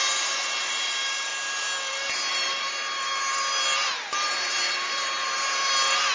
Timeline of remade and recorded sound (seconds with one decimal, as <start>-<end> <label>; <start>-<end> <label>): 0.0-1.3 remade; 1.3-2.3 recorded; 2.3-6.1 remade

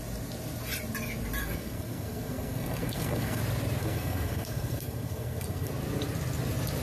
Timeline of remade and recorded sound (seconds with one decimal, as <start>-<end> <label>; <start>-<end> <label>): 0.0-1.4 recorded; 1.4-3.4 remade; 3.4-3.8 recorded; 3.8-5.7 remade; 5.7-6.8 recorded

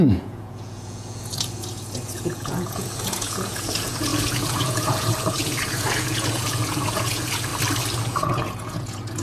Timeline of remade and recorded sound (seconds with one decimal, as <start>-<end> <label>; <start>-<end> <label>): 0.0-7.5 remade; 7.5-8.0 recorded; 8.0-9.2 remade

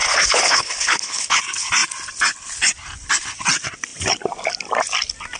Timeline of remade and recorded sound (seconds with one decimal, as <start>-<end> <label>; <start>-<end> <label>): 0.0-1.4 remade; 1.4-5.4 recorded

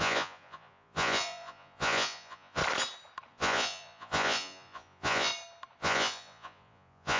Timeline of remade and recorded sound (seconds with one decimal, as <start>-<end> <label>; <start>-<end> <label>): 0.0-2.6 remade; 2.6-3.3 recorded; 3.3-5.3 remade; 5.3-5.8 recorded; 5.8-7.2 remade

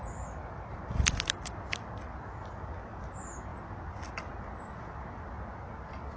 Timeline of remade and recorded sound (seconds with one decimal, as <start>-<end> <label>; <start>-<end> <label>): 0.0-0.7 recorded; 0.7-2.0 remade; 2.0-6.2 recorded